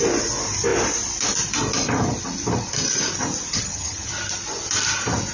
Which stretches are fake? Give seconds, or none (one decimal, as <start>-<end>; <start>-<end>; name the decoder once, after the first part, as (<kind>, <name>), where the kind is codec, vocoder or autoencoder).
3.5-4.1 (vocoder, HiFi-GAN)

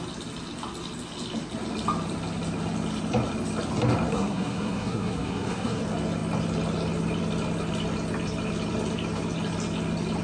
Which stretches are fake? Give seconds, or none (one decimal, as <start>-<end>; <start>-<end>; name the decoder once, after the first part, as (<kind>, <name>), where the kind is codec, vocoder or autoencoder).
4.1-5.8 (codec, SNAC)

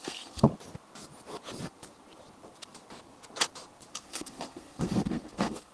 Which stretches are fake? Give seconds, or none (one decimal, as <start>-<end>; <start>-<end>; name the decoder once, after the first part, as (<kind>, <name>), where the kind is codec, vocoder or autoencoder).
0.0-0.5 (codec, SNAC); 3.9-5.7

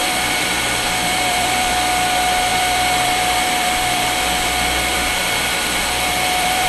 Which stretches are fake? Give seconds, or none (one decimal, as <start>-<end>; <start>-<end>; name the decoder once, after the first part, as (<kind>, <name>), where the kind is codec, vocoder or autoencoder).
0.0-1.7 (vocoder, BigVGAN v2); 2.5-6.7

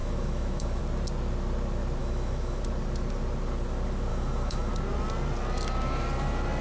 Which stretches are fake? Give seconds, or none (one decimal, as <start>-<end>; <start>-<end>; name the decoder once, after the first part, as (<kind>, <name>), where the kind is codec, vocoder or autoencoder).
0.0-0.8 (autoencoder, DAC-VAE); 2.0-2.6; 4.1-4.7

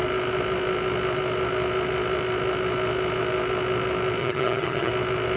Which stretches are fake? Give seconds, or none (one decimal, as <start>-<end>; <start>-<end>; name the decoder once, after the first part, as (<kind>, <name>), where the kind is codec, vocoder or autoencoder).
4.2-4.9 (vocoder, HiFi-GAN)